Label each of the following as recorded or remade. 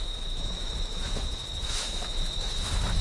remade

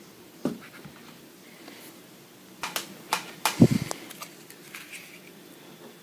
recorded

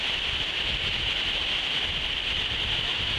recorded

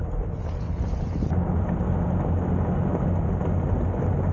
recorded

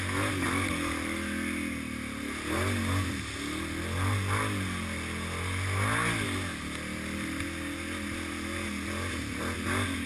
recorded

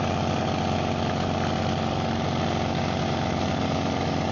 recorded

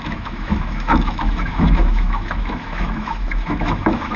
remade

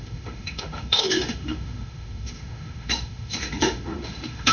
remade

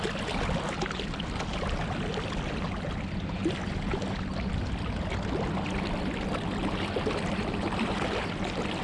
recorded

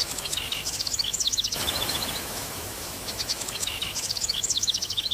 remade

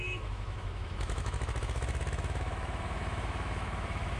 remade